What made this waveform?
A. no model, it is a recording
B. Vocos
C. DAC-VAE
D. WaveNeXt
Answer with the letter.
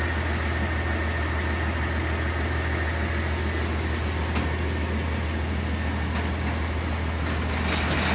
A